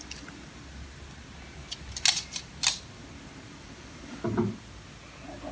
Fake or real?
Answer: real